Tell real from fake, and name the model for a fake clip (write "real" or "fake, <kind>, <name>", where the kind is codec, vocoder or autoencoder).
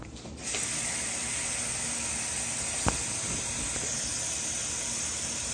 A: real